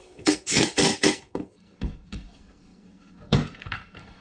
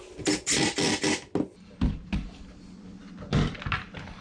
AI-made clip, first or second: first